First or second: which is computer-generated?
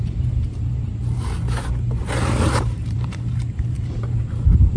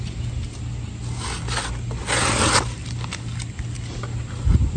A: first